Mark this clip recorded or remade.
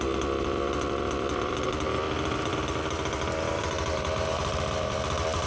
remade